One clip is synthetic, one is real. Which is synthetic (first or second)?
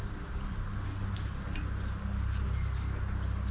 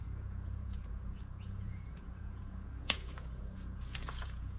second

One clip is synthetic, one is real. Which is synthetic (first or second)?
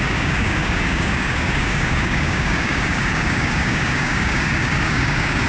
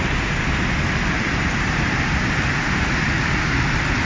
first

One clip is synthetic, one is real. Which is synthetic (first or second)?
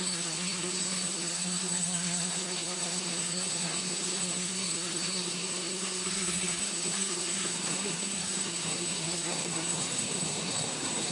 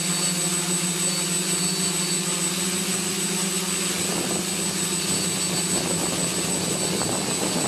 first